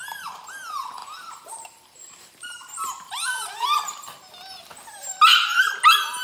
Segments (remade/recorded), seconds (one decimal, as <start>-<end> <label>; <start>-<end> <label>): 0.0-1.0 recorded; 1.0-4.7 remade; 4.7-6.2 recorded